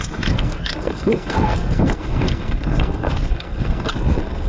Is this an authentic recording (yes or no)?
no